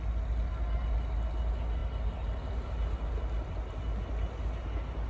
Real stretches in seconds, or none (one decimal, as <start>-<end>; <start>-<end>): 0.0-5.1